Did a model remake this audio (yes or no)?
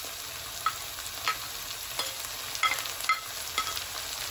no